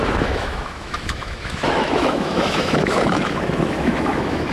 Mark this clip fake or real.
fake